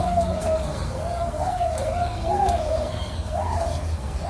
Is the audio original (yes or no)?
no